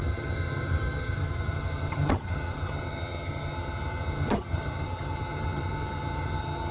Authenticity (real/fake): fake